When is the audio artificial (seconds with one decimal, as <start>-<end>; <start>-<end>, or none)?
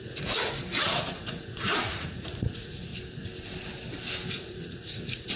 0.0-2.9; 4.3-5.4